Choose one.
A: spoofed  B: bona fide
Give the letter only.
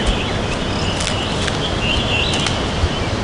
B